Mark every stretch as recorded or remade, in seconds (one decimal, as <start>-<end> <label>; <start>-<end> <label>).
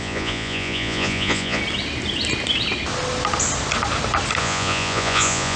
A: 0.0-1.6 remade; 1.6-4.4 recorded; 4.4-5.6 remade